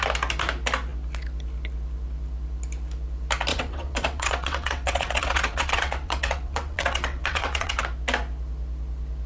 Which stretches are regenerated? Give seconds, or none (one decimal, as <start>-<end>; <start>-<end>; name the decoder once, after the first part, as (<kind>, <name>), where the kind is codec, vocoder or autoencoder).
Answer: 3.5-7.8 (vocoder, WaveNeXt)